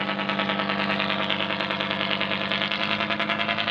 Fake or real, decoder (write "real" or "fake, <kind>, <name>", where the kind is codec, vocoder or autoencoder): real